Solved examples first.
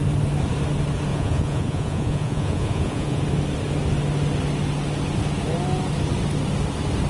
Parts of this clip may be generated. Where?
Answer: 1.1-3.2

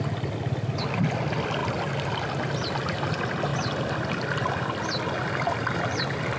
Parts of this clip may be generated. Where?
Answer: none

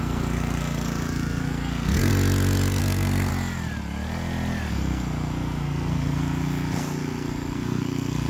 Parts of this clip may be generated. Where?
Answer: 0.0-2.1; 2.8-3.3; 4.7-8.3

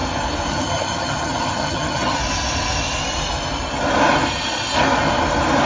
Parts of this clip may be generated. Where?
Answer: 0.5-2.2